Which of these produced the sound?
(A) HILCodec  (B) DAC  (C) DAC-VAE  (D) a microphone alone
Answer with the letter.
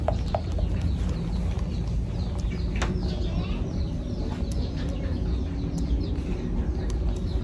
D